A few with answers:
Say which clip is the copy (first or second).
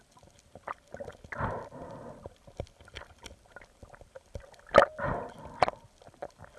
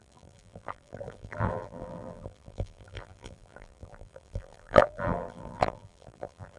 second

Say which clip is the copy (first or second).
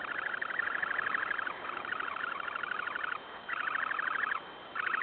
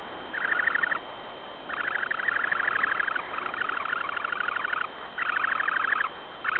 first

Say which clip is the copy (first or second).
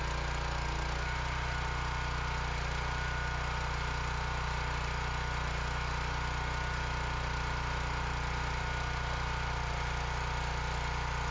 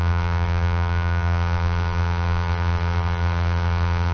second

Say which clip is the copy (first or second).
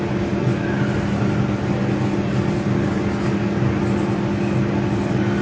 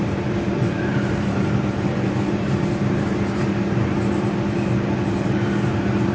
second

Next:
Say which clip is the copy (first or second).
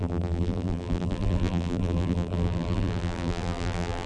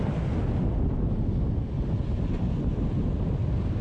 first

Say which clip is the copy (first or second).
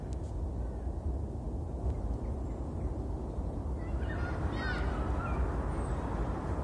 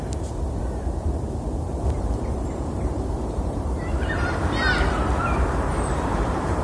second